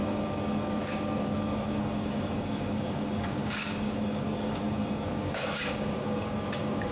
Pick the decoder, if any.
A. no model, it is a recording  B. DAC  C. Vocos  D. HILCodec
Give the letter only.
B